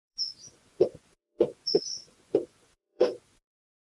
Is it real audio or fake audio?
fake